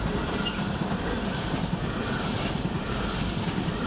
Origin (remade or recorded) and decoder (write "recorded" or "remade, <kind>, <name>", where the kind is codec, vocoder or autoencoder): recorded